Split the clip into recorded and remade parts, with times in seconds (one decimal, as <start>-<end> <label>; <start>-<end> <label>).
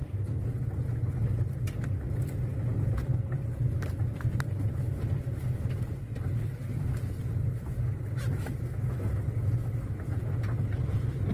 0.0-11.3 recorded